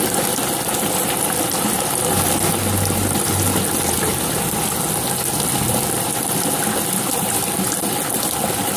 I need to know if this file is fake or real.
real